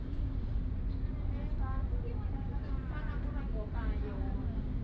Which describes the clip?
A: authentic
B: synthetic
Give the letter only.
A